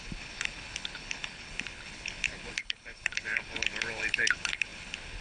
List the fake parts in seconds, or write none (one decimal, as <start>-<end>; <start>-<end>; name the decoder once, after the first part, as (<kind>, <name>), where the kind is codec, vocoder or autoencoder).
0.0-5.2 (codec, HILCodec)